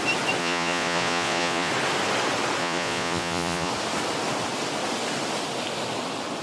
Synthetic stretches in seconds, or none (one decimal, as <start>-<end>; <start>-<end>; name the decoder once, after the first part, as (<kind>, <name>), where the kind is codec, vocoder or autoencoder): 0.4-1.7 (vocoder, Vocos); 2.6-3.7